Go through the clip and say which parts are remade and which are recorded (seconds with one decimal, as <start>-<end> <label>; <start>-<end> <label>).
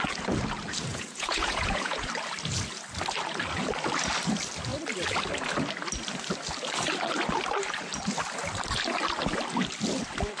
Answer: 0.0-0.9 recorded; 0.9-2.1 remade; 2.1-10.4 recorded